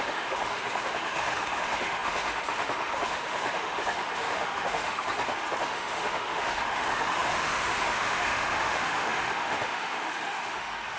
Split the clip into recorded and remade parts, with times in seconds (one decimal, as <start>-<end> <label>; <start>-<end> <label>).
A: 0.0-5.1 remade; 5.1-5.6 recorded; 5.6-11.0 remade